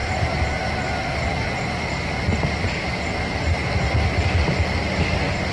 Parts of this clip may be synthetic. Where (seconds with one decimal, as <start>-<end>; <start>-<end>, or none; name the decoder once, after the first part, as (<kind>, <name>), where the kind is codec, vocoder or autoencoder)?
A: 1.8-5.5 (vocoder, BigVGAN v2)